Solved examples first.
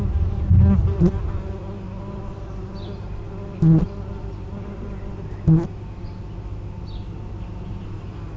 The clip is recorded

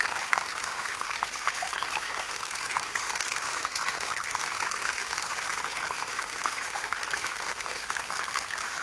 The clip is remade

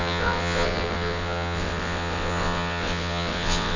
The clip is remade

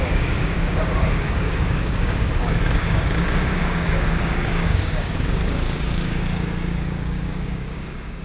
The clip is remade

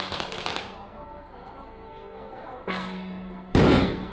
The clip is remade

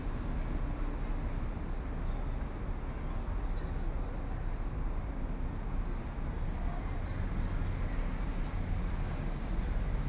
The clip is recorded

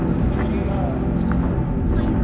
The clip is recorded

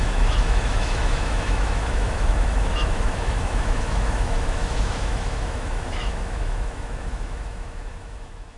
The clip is remade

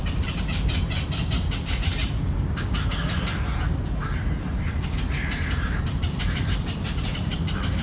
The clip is remade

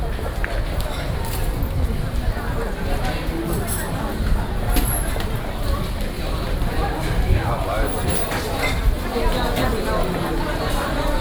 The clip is recorded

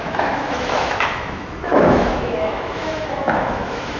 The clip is remade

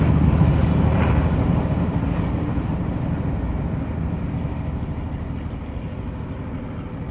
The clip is recorded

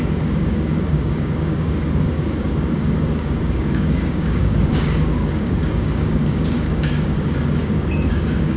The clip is remade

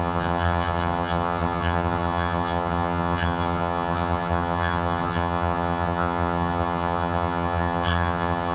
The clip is remade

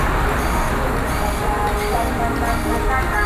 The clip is recorded